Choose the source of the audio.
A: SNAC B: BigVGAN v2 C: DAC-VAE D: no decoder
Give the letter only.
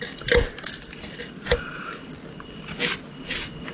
D